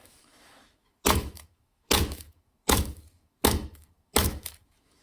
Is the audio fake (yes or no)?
yes